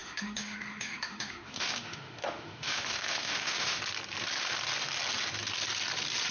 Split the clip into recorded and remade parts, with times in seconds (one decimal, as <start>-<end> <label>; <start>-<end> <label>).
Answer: 0.0-3.8 remade; 3.8-6.3 recorded